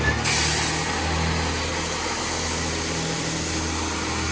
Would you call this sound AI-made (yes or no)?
no